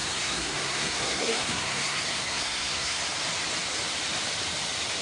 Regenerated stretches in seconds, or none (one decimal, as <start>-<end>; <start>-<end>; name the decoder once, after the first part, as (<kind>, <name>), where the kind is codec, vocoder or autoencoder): 0.0-3.0 (codec, SNAC)